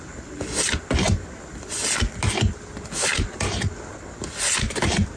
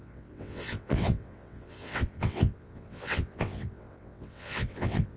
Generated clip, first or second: second